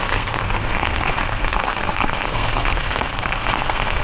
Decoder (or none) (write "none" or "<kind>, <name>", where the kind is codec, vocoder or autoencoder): codec, SNAC